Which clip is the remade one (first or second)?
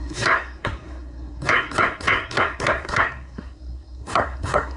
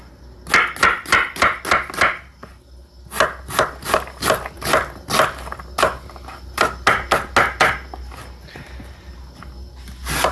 first